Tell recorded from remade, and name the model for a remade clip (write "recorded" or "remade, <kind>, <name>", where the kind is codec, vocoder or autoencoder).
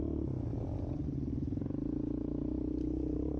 recorded